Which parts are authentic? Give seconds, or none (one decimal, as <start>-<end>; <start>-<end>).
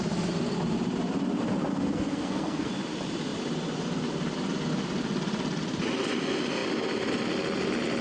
0.0-1.7; 2.7-8.0